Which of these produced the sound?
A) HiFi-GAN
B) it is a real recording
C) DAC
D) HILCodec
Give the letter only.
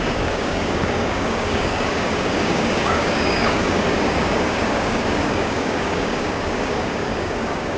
C